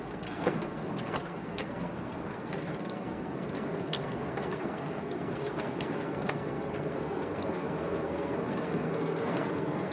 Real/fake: fake